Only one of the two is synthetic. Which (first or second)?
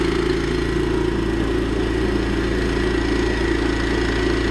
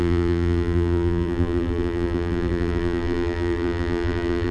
second